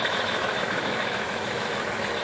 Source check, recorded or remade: remade